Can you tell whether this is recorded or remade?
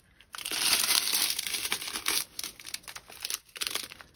recorded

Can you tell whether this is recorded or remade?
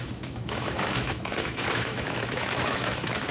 remade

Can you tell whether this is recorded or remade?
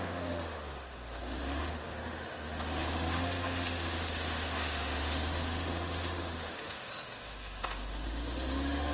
remade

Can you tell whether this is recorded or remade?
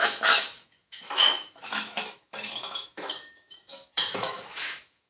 remade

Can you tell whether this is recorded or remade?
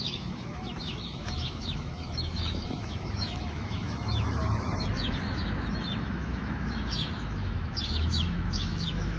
remade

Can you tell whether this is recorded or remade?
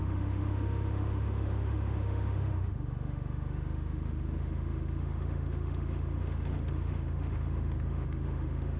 remade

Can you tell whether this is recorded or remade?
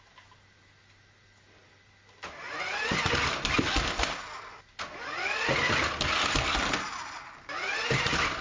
recorded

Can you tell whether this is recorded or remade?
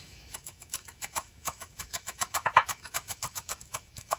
remade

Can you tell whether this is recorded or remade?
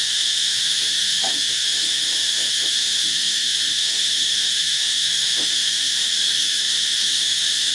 remade